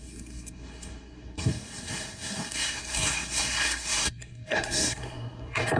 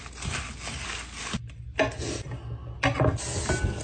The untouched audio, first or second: second